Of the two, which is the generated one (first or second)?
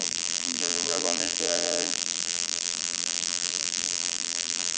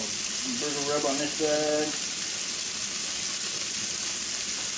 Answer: first